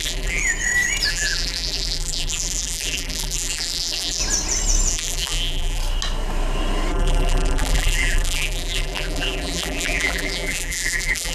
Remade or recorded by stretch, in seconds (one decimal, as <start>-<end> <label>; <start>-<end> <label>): 0.0-0.4 remade; 0.4-1.1 recorded; 1.1-4.2 remade; 4.2-4.9 recorded; 4.9-5.8 remade; 5.8-6.9 recorded; 6.9-11.3 remade